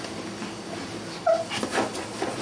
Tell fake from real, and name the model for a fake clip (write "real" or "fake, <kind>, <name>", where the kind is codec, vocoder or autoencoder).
real